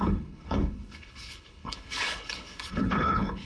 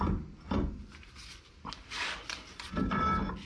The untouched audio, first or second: second